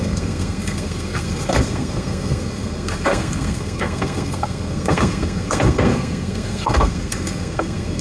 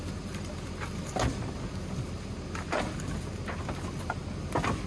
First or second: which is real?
second